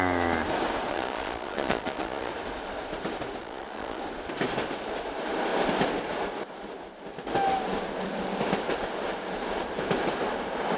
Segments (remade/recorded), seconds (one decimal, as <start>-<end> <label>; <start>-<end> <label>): 0.0-0.9 recorded; 0.9-2.3 remade; 2.3-3.4 recorded; 3.4-4.0 remade; 4.0-10.8 recorded